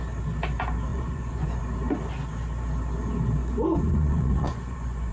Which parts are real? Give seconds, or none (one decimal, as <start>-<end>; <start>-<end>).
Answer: 0.0-0.9; 1.6-3.4